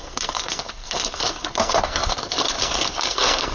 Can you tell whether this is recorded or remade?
remade